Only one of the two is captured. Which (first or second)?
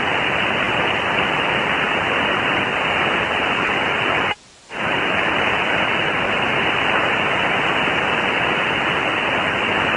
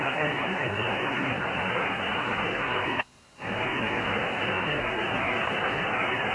first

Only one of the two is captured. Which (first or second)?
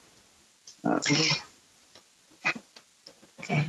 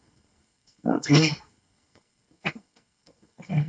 first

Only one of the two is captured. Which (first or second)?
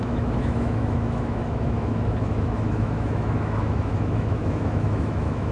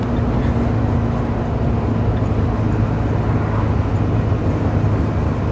second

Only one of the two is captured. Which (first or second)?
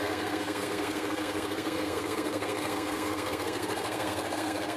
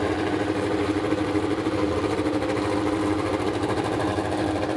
second